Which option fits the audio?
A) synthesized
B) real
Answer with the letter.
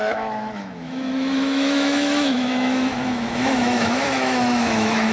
A